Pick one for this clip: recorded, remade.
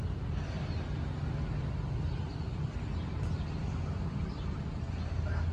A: recorded